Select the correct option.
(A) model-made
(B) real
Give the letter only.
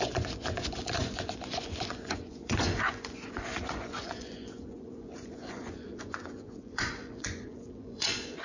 A